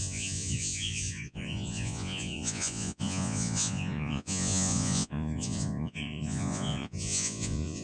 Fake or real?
fake